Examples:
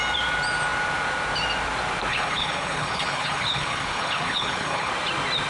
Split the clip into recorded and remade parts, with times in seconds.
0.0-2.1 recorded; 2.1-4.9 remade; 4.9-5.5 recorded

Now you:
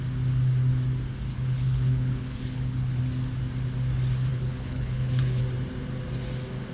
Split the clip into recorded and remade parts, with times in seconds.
0.0-1.3 recorded; 1.3-3.0 remade; 3.0-4.3 recorded; 4.3-5.4 remade; 5.4-6.7 recorded

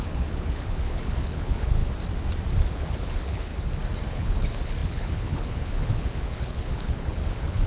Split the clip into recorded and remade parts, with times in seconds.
0.0-1.8 remade; 1.8-2.7 recorded; 2.7-3.5 remade; 3.5-4.1 recorded; 4.1-7.7 remade